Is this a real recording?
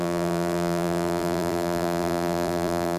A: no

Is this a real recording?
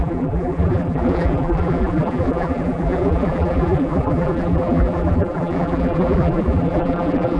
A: no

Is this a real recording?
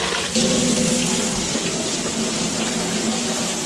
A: yes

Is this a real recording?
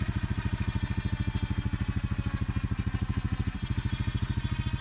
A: yes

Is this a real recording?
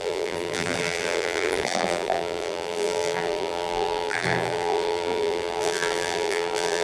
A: no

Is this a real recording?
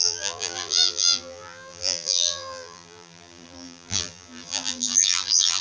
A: no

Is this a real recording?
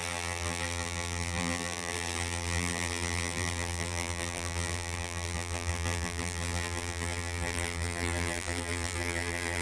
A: no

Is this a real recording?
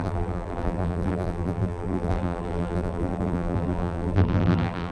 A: no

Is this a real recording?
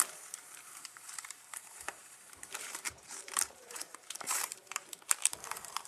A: no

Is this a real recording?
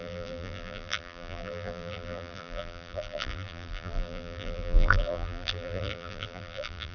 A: no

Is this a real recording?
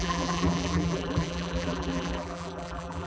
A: no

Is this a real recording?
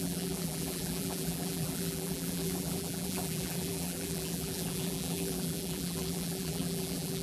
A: no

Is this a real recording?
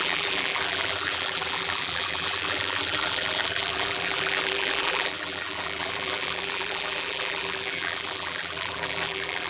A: no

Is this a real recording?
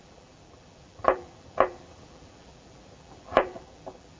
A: no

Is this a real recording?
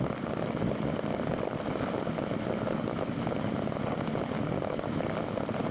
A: yes